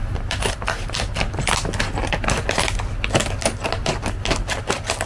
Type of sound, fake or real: real